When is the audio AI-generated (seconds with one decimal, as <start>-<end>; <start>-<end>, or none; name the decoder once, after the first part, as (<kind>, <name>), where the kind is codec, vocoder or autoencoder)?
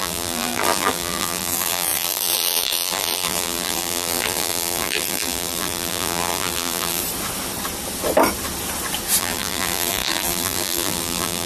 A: 0.0-7.0 (vocoder, BigVGAN v2); 9.2-11.5